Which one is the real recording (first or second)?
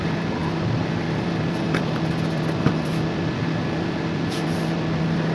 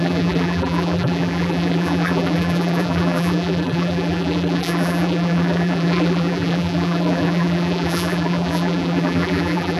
first